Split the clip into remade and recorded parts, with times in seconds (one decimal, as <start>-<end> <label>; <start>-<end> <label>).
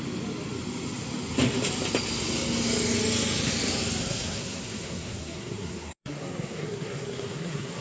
0.0-4.0 recorded; 4.0-7.8 remade